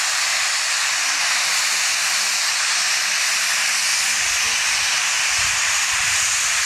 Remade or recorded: recorded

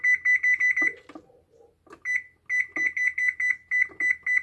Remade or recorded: recorded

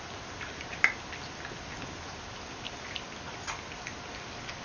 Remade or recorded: recorded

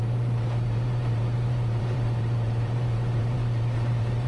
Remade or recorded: remade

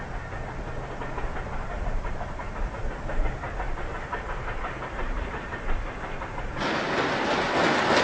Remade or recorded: recorded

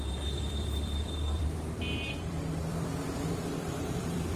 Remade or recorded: remade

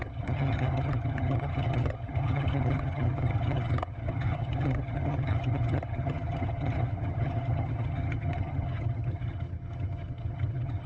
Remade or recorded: remade